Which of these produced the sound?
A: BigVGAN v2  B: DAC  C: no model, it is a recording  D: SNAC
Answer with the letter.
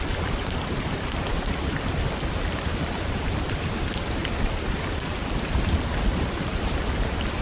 C